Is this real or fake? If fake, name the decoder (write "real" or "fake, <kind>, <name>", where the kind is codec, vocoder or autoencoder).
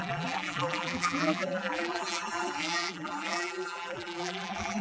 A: fake, vocoder, BigVGAN v2